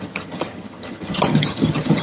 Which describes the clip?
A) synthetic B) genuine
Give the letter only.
A